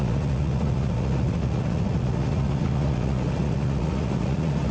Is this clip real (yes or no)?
no